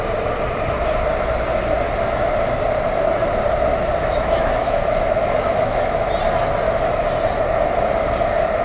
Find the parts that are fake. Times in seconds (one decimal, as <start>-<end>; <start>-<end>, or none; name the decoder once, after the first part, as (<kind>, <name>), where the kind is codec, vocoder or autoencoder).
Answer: 3.7-6.1 (autoencoder, DAC-VAE)